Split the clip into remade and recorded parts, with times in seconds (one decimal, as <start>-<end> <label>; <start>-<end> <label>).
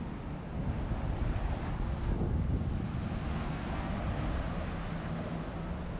0.0-3.3 recorded; 3.3-3.9 remade; 3.9-6.0 recorded